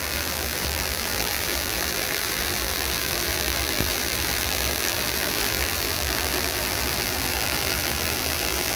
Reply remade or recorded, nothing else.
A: remade